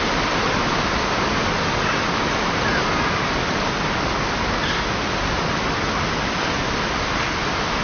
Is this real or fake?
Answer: real